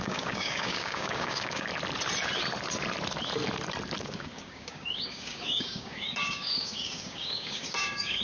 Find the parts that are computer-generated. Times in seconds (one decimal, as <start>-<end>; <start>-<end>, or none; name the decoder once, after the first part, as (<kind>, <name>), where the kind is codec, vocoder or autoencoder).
0.0-1.7 (codec, DAC); 4.0-8.2

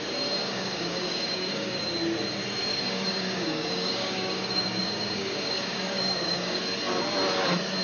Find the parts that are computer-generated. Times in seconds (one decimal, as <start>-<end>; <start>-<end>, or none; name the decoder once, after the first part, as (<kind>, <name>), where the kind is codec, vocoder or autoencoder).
0.4-1.8 (codec, DAC); 2.7-6.6

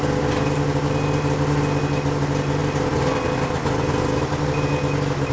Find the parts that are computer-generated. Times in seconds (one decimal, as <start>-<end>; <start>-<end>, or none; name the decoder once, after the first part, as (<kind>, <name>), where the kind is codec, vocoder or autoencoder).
none

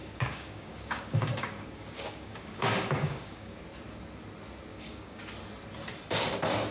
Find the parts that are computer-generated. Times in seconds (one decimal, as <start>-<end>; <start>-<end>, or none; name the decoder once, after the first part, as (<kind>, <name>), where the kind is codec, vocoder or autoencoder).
0.0-3.6 (codec, DAC); 4.7-5.3

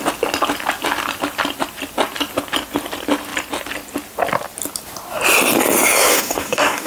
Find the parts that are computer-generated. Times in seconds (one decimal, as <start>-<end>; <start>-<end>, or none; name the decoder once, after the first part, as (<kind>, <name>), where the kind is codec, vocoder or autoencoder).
6.1-6.9 (codec, DAC)

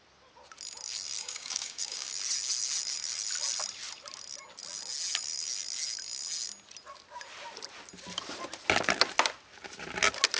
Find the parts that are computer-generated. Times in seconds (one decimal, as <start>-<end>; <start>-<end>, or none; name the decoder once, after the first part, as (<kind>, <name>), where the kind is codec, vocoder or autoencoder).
1.2-2.1 (codec, DAC)

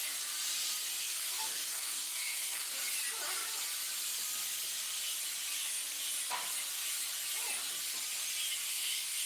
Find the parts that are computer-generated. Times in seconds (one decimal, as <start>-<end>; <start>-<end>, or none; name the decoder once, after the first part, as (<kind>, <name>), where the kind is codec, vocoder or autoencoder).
1.0-2.7 (codec, DAC); 8.7-9.3